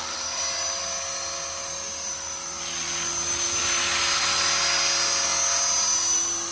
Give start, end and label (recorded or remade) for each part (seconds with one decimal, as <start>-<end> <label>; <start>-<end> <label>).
0.0-6.5 recorded